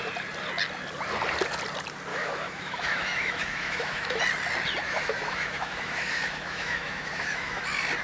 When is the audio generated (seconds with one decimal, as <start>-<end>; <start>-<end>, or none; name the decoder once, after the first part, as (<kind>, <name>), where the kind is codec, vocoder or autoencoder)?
2.1-4.2 (autoencoder, DAC-VAE); 4.8-7.6

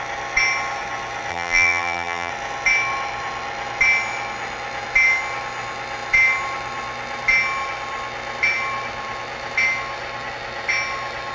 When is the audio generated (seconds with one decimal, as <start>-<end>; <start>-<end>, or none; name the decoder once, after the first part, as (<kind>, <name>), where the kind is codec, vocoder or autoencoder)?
1.3-2.3 (vocoder, BigVGAN v2)